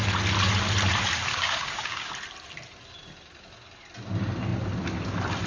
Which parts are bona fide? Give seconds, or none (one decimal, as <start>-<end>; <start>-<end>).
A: 0.0-1.3; 2.1-5.5